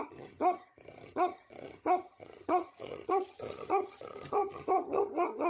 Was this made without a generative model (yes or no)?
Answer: no